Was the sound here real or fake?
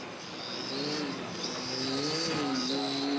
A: real